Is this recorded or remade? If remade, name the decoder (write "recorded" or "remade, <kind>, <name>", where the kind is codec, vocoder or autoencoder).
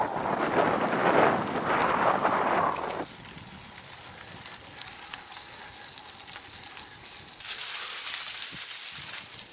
recorded